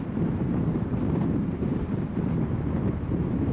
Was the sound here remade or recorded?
remade